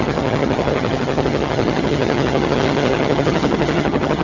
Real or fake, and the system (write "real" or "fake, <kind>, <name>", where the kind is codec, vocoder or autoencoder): fake, vocoder, HiFi-GAN